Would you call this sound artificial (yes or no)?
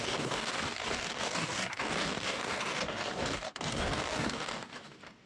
yes